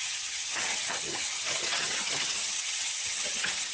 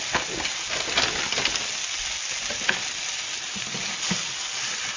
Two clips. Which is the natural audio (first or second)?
second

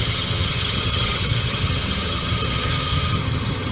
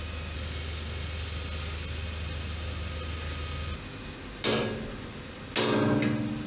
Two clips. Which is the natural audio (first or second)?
second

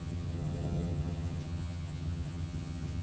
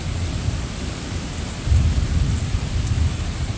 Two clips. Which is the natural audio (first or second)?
second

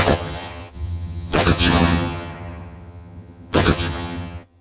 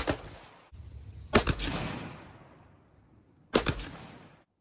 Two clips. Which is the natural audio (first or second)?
second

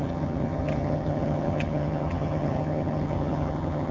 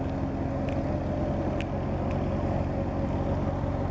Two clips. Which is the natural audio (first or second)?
second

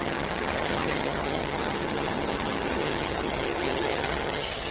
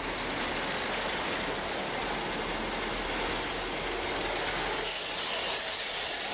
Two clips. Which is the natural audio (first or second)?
second